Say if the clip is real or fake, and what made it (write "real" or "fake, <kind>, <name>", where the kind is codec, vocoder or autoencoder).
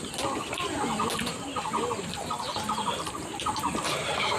real